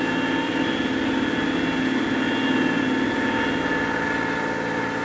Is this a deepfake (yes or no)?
no